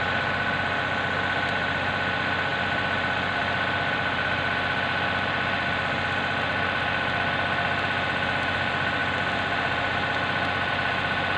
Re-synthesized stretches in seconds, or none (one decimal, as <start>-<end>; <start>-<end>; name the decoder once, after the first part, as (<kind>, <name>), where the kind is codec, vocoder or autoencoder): none